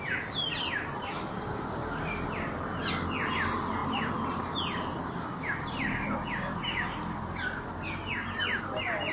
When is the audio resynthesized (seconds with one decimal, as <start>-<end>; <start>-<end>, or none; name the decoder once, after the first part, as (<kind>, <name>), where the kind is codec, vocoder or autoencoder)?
none